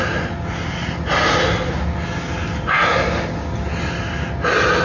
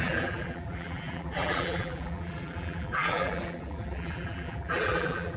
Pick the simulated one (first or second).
second